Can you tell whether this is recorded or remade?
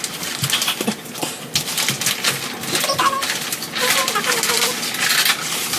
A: recorded